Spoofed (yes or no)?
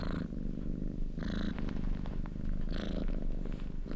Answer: no